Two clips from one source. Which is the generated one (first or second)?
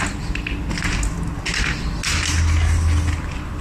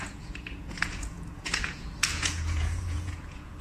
second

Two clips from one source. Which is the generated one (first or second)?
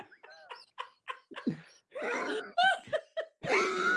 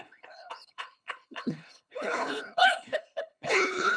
second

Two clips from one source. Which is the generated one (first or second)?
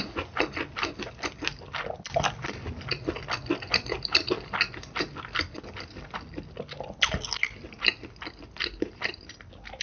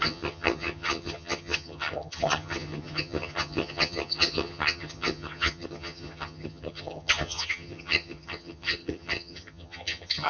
second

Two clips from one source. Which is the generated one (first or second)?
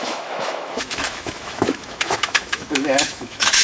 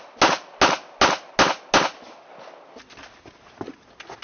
first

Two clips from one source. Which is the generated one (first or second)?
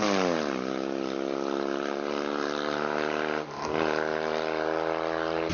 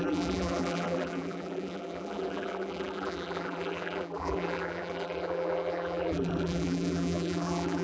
second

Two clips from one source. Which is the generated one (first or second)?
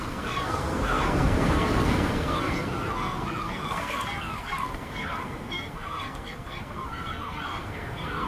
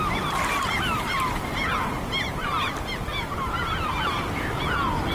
first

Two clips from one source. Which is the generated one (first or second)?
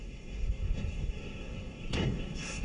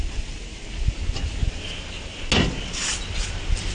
first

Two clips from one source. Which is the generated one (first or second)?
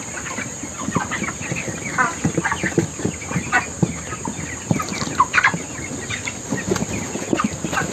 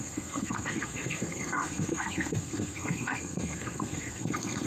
second